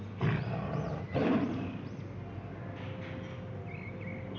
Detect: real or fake real